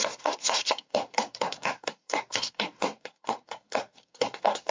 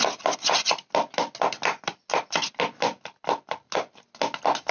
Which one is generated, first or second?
first